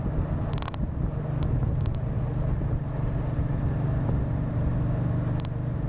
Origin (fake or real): real